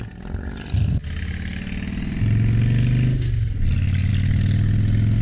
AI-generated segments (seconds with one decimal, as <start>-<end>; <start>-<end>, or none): none